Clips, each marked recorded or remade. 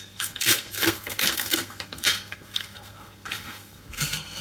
remade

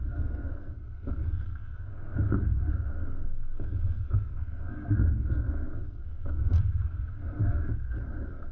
remade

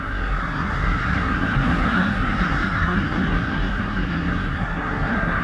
remade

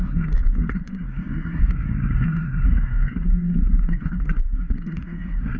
remade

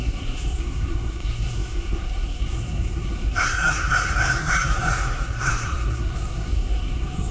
remade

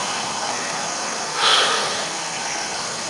remade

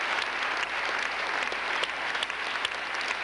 recorded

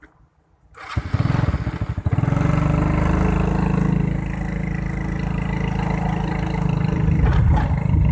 recorded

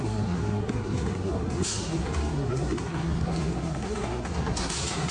remade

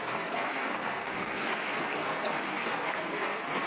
remade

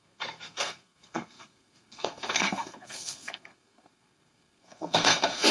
remade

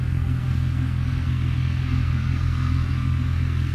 remade